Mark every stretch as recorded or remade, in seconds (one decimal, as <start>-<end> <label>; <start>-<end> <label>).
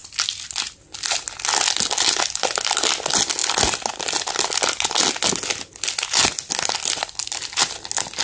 0.0-8.2 recorded